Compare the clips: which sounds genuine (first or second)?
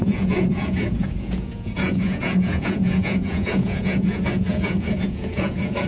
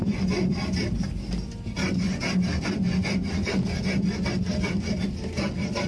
second